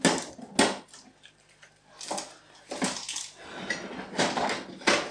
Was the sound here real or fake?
real